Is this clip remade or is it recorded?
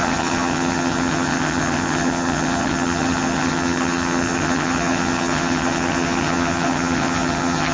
remade